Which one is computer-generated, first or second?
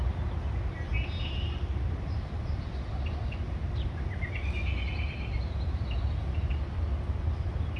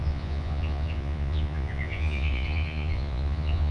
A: second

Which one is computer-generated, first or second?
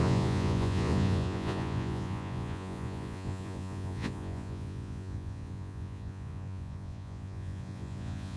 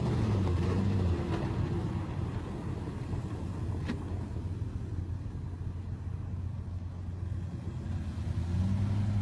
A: first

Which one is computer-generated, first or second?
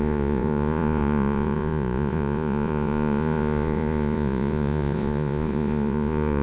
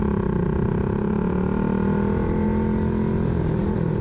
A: first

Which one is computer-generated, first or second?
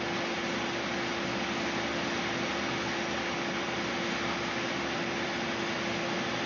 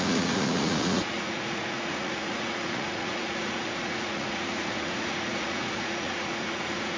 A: second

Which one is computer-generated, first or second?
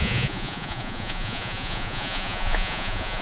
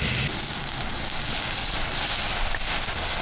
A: first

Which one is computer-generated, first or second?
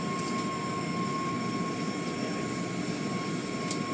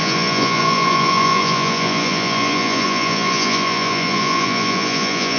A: second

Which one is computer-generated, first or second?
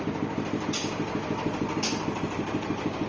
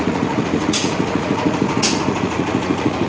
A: second